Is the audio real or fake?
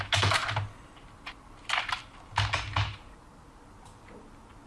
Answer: real